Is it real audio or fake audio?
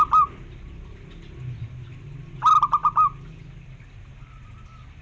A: real